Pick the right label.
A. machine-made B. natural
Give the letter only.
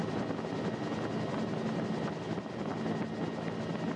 B